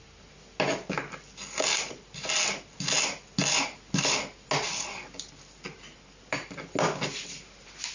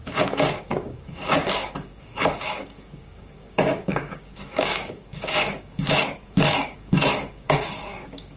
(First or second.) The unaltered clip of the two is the first